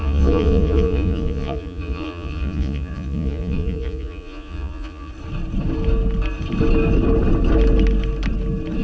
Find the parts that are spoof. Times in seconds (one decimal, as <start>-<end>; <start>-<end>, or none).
0.0-5.1